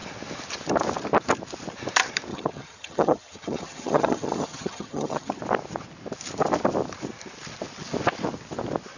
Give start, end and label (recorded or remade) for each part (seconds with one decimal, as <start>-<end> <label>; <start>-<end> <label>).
0.0-2.3 recorded; 2.3-5.4 remade; 5.4-9.0 recorded